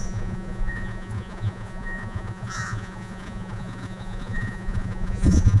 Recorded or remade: remade